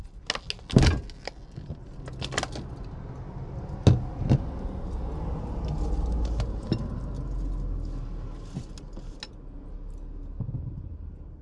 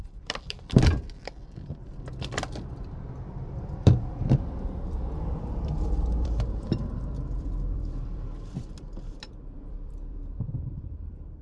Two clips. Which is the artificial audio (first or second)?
second